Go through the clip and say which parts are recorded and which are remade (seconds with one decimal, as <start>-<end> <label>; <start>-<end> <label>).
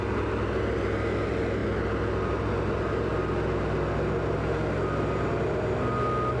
0.0-6.4 recorded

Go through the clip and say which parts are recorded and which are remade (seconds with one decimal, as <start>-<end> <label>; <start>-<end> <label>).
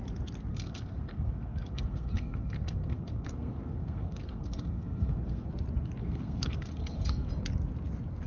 0.0-0.5 recorded; 0.5-5.5 remade; 5.5-6.0 recorded; 6.0-7.3 remade; 7.3-8.3 recorded